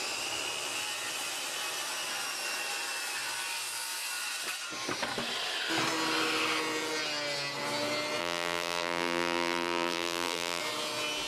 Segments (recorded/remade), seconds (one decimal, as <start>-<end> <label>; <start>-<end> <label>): 0.0-8.2 recorded; 8.2-10.6 remade; 10.6-11.3 recorded